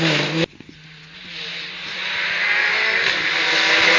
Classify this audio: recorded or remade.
recorded